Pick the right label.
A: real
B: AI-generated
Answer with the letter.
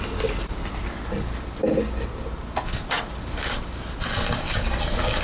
A